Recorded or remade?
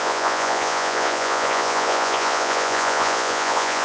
remade